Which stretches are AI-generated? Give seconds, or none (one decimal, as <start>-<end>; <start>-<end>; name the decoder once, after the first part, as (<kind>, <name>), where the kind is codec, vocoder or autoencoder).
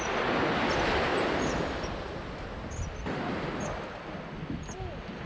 none